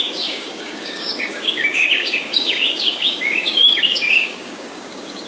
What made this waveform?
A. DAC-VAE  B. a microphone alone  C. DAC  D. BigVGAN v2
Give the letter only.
C